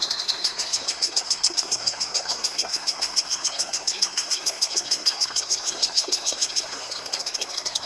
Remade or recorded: remade